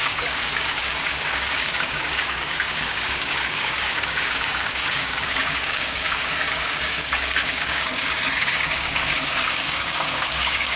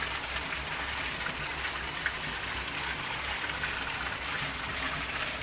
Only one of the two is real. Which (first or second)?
second